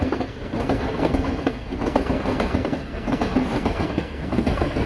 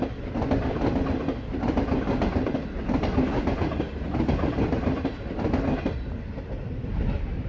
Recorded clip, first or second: second